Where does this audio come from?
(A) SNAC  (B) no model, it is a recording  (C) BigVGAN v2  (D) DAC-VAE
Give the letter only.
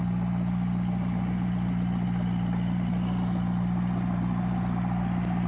B